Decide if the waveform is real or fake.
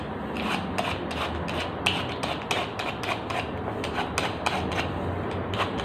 real